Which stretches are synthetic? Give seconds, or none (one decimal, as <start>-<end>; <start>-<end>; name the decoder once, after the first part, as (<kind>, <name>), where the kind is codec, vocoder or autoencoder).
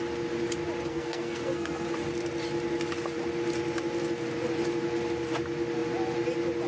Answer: 0.9-1.9 (codec, SNAC)